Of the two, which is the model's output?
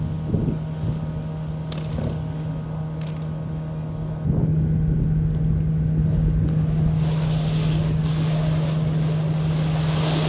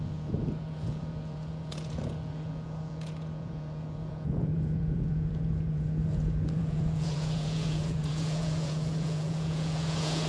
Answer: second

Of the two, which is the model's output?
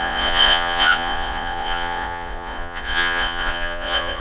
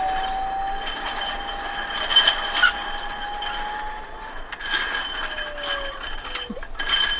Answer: first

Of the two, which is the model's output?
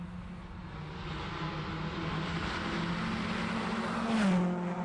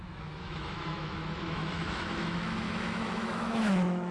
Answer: second